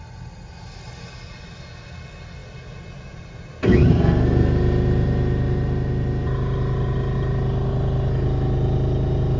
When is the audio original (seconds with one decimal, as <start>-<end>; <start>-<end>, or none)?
0.0-9.4